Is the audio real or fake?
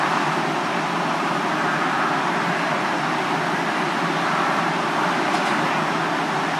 real